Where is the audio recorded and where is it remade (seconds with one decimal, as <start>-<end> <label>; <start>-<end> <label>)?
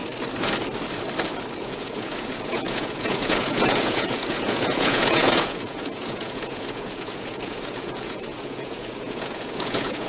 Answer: 0.0-1.6 recorded; 1.6-10.1 remade